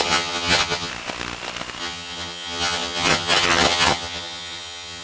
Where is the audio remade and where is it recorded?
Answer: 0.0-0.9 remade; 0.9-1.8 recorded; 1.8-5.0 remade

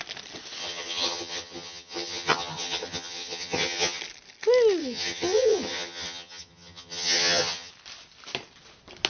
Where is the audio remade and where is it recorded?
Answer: 0.0-0.6 recorded; 0.6-4.0 remade; 4.0-4.8 recorded; 4.8-7.7 remade; 7.7-9.1 recorded

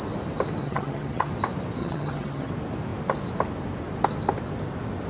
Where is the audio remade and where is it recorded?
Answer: 0.0-0.6 recorded; 0.6-1.3 remade; 1.3-1.8 recorded; 1.8-2.5 remade; 2.5-5.1 recorded

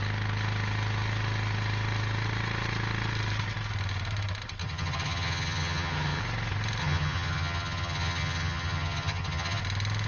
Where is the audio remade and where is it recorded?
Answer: 0.0-4.6 recorded; 4.6-6.2 remade; 6.2-6.8 recorded; 6.8-9.6 remade; 9.6-10.1 recorded

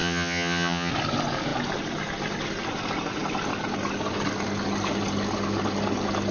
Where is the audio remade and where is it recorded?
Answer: 0.0-0.9 remade; 0.9-6.3 recorded